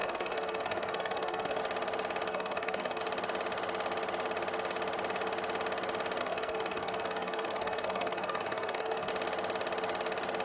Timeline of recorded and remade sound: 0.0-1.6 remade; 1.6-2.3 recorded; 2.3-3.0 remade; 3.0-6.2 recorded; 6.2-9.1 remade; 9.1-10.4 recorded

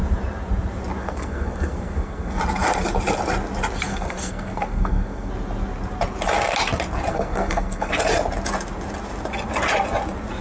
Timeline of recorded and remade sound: 0.0-1.0 recorded; 1.0-2.4 remade; 2.4-3.9 recorded; 3.9-5.3 remade; 5.3-7.1 recorded; 7.1-7.9 remade; 7.9-10.4 recorded

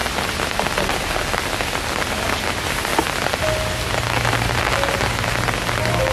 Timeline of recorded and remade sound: 0.0-6.1 recorded

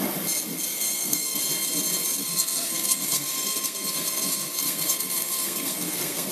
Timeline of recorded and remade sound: 0.0-0.7 recorded; 0.7-1.4 remade; 1.4-2.2 recorded; 2.2-6.3 remade